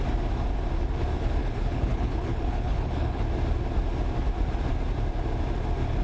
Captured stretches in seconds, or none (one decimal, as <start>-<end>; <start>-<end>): 0.0-1.4; 3.2-6.0